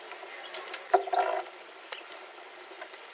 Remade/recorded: recorded